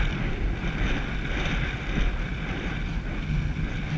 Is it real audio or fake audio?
real